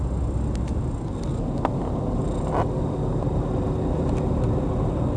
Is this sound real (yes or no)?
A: yes